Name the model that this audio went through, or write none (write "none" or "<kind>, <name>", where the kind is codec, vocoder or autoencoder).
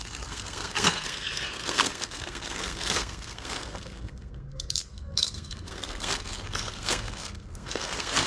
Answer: codec, SNAC